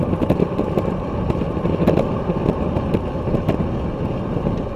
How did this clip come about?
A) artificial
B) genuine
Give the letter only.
B